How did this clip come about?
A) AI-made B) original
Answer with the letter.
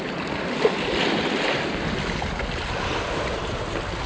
B